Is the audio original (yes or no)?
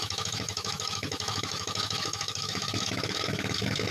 no